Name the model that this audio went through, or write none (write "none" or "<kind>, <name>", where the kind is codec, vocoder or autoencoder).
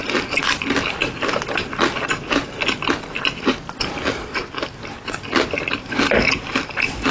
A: none